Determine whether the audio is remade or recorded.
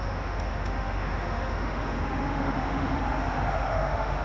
remade